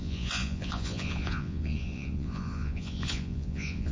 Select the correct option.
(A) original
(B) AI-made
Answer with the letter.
B